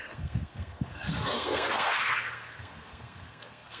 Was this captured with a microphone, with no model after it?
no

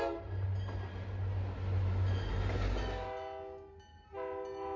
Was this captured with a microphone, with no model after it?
yes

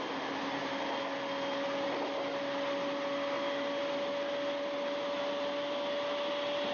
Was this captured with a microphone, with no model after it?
yes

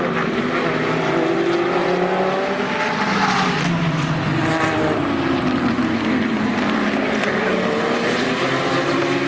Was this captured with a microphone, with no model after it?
yes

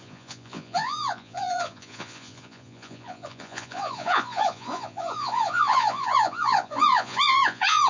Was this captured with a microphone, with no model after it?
no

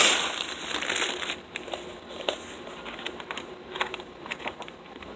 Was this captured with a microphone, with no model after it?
yes